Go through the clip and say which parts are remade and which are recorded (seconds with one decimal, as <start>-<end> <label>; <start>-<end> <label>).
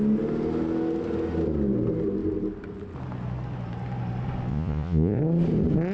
0.0-4.5 recorded; 4.5-5.2 remade; 5.2-5.9 recorded